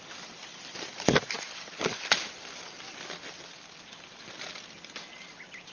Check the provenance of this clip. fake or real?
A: real